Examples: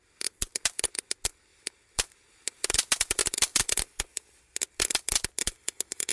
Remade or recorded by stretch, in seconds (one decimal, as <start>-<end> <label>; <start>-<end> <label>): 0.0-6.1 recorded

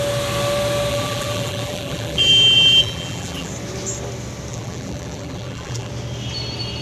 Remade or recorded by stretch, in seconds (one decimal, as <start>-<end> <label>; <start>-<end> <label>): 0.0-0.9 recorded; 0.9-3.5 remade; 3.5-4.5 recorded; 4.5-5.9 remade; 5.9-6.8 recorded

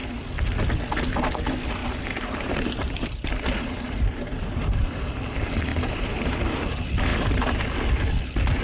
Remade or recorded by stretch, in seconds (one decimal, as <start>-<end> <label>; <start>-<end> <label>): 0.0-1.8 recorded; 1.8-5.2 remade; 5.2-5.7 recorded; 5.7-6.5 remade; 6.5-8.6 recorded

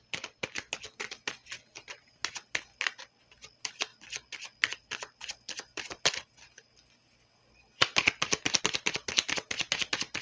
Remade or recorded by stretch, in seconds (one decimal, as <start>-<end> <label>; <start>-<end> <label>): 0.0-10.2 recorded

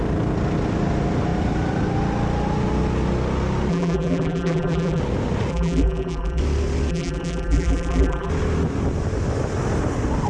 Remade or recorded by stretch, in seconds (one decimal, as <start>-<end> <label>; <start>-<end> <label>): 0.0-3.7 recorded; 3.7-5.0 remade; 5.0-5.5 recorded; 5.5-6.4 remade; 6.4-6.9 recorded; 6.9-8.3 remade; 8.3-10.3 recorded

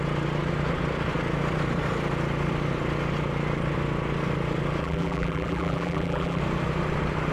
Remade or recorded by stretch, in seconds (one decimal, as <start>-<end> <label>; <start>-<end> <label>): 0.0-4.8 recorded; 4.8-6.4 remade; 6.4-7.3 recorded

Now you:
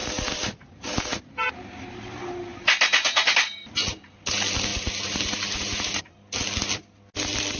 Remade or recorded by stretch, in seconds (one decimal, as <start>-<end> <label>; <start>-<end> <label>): 0.0-1.2 remade; 1.2-4.7 recorded; 4.7-6.0 remade; 6.0-7.6 recorded